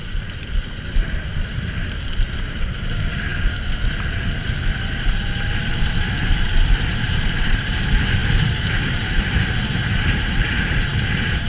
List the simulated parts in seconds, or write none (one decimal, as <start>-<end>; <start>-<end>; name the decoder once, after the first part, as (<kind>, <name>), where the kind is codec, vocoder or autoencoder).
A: 0.0-3.3 (vocoder, BigVGAN v2); 6.8-11.5